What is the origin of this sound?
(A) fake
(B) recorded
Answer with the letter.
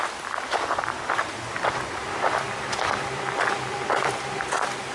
A